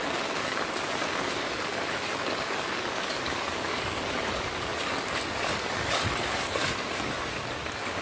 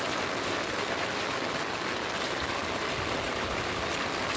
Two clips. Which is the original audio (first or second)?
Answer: second